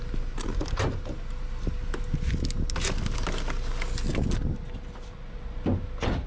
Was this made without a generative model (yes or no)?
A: yes